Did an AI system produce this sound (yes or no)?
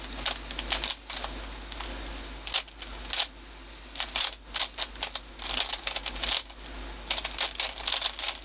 no